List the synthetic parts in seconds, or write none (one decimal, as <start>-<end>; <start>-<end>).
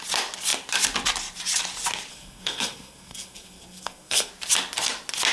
2.1-4.3